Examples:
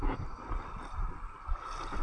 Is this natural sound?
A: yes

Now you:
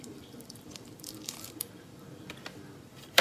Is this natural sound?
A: no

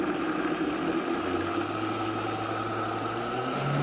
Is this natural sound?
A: yes